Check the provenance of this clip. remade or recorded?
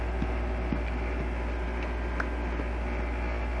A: recorded